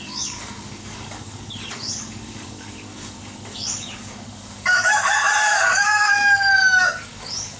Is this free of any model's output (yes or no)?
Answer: no